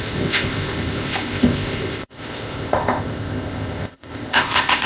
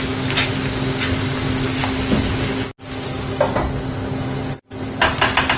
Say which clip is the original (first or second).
second